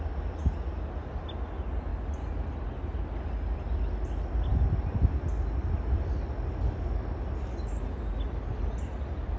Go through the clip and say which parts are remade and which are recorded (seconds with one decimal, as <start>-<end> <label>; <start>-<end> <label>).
0.0-9.4 recorded